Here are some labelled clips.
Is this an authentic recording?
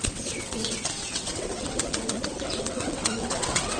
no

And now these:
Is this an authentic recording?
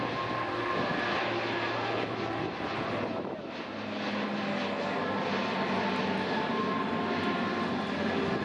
yes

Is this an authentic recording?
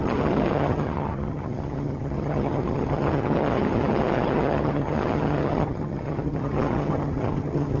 no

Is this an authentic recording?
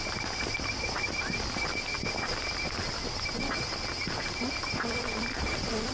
yes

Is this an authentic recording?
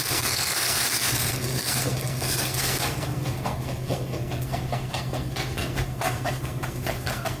no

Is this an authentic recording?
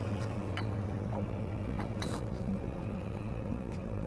no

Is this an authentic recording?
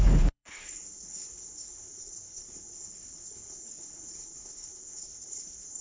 no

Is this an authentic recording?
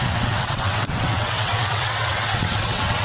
no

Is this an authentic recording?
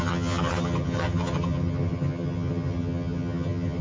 no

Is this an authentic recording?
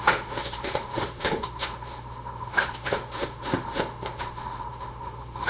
no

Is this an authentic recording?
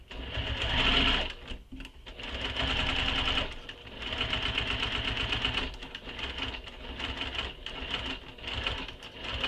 yes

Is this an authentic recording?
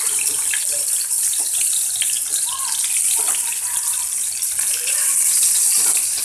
yes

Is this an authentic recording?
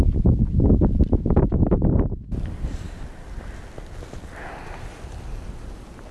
yes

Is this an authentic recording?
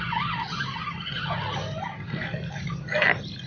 yes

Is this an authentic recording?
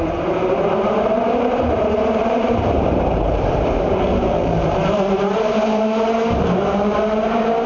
no